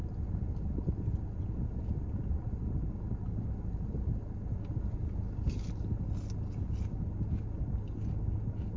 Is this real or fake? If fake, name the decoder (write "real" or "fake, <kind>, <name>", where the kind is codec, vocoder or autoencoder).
real